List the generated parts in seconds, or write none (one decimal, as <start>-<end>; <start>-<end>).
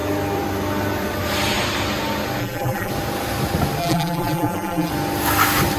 2.4-2.9; 3.8-4.9